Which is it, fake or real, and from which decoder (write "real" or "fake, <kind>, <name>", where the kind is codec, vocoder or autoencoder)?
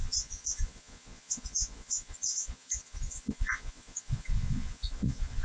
fake, vocoder, Vocos